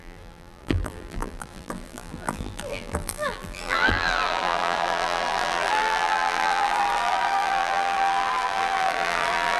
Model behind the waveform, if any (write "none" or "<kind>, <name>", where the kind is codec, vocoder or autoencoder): vocoder, BigVGAN v2